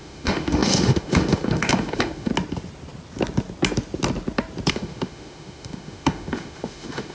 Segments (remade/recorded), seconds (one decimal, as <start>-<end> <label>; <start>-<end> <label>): 0.0-2.3 remade; 2.3-4.7 recorded; 4.7-7.1 remade